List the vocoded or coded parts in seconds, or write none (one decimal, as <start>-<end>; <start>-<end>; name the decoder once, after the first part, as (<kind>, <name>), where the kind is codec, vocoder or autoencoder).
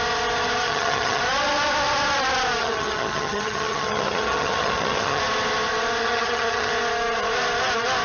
0.6-1.2 (vocoder, HiFi-GAN); 2.6-5.2; 6.0-6.7